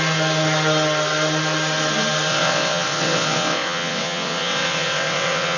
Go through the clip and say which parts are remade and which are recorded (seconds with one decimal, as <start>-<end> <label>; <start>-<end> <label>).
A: 0.0-2.3 recorded; 2.3-5.6 remade